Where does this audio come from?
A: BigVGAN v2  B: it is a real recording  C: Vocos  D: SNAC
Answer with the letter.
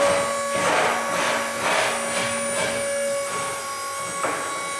B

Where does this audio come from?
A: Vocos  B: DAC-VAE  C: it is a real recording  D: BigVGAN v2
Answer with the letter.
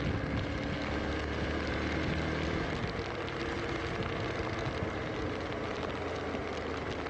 C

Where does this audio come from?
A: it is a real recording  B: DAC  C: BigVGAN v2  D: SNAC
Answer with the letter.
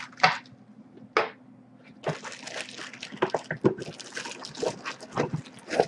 A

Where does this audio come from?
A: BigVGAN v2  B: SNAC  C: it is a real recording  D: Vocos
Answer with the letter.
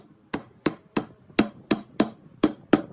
A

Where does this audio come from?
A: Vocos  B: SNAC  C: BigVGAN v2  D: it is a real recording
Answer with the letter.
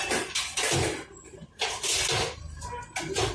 D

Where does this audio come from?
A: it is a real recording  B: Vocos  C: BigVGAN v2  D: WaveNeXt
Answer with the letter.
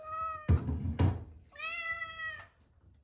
A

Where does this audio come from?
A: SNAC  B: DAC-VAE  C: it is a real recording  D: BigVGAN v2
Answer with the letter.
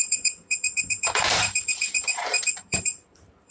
D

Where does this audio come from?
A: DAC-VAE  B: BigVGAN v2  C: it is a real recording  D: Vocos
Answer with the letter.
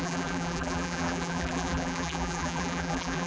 B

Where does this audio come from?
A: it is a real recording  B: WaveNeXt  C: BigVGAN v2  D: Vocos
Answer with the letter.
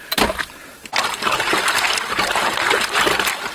A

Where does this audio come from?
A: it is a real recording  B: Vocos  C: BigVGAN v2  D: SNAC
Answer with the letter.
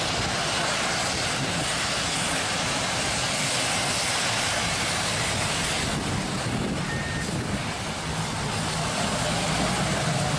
A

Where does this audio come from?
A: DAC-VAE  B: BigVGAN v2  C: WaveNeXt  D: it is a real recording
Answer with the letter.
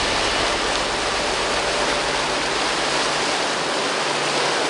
D